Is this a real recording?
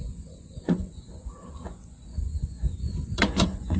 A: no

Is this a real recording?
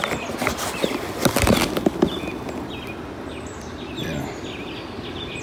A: yes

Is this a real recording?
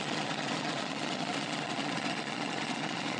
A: no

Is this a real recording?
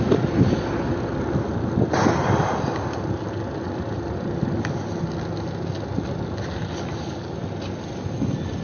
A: yes